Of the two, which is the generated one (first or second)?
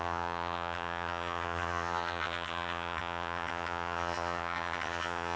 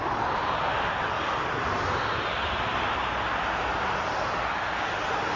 first